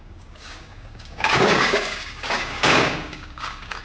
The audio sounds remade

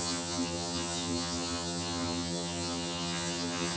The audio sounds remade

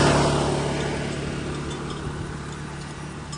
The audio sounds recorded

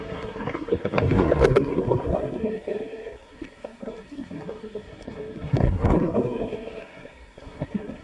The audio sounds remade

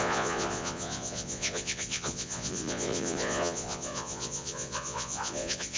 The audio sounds remade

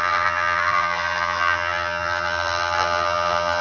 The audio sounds remade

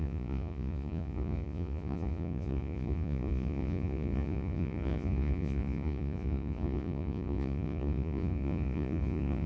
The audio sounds remade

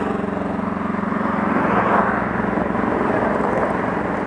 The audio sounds recorded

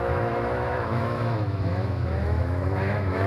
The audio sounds remade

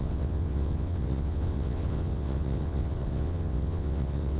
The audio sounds remade